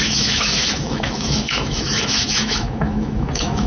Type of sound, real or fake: fake